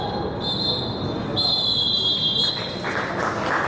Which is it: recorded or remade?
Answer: recorded